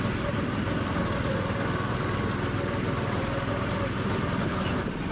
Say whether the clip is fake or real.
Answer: real